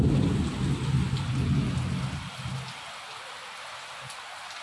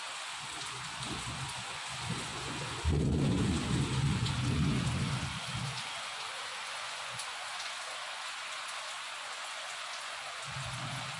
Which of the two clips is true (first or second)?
first